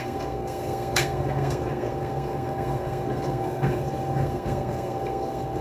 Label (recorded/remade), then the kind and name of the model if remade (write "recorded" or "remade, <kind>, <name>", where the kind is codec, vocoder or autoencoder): remade, codec, SNAC